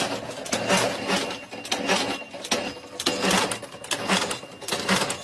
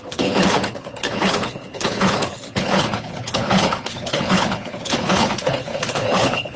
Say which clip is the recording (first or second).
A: first